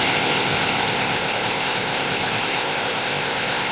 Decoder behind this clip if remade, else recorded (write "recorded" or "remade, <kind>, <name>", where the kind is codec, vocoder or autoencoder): remade, codec, ZipCodec